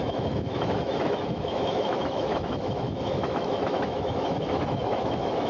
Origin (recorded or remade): remade